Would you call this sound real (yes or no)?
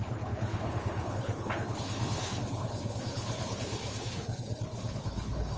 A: no